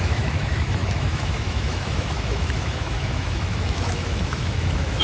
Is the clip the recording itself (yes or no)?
no